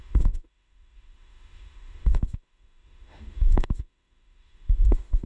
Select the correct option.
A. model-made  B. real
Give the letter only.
A